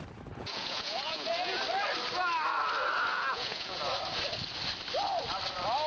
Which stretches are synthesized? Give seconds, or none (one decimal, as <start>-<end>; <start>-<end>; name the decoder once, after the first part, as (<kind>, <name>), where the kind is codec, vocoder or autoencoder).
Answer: 0.4-1.6 (vocoder, Vocos); 3.1-3.8